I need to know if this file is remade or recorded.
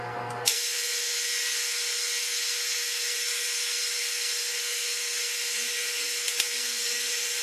remade